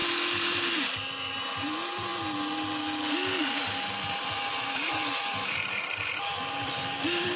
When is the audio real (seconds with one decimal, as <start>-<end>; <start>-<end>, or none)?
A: 2.1-3.4